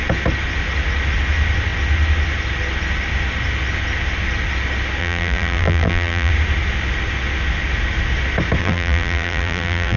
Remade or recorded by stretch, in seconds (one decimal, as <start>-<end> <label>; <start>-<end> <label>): 0.0-5.0 recorded; 5.0-6.3 remade; 6.3-8.6 recorded; 8.6-10.0 remade